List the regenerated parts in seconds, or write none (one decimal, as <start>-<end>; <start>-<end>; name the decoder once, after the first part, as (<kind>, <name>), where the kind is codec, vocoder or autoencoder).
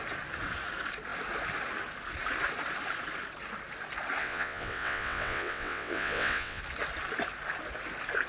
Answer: 4.2-6.6 (vocoder, WaveNeXt)